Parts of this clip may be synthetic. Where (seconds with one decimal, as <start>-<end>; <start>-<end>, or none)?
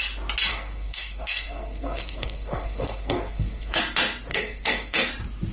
0.5-3.8; 4.3-5.1